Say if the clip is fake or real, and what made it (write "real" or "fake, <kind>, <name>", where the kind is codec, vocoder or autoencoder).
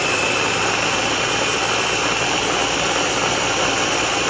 real